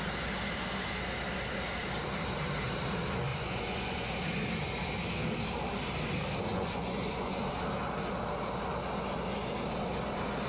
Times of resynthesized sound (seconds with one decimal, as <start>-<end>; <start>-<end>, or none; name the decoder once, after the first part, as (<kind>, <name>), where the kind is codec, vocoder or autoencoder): 3.3-4.1 (vocoder, Vocos); 6.5-7.4